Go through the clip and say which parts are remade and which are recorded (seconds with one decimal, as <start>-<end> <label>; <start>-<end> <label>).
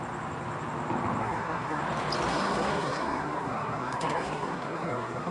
0.0-1.2 recorded; 1.2-1.8 remade; 1.8-2.3 recorded; 2.3-5.3 remade